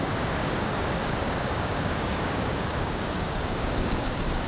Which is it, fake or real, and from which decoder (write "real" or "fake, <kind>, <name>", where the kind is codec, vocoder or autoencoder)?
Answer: fake, codec, DAC